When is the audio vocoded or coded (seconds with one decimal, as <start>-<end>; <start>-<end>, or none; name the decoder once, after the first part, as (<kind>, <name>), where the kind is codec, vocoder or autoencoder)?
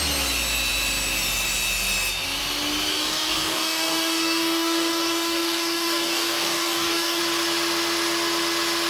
2.9-7.2 (codec, DAC)